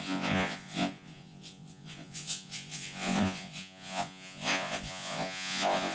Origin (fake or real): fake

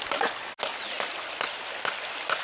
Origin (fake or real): real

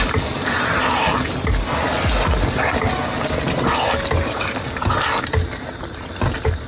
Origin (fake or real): real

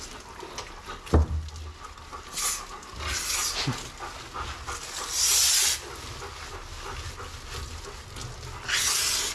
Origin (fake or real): real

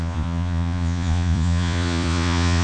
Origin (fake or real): fake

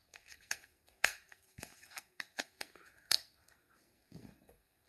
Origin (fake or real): fake